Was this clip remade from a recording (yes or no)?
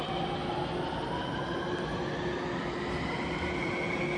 no